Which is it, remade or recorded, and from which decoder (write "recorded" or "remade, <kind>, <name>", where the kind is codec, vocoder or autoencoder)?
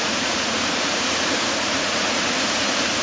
remade, vocoder, Vocos